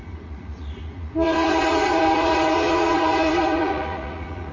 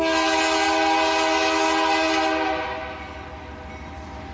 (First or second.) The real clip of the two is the second